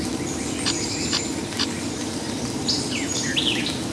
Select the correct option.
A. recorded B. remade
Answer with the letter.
A